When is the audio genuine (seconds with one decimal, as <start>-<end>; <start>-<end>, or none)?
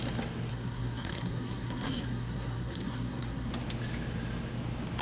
0.0-0.5; 3.5-5.0